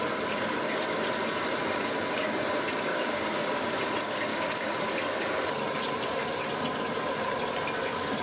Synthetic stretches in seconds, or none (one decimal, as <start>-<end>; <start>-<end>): 2.9-3.8; 4.3-4.9